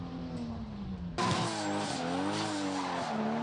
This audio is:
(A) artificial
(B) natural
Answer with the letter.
B